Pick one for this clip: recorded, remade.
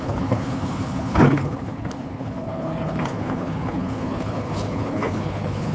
remade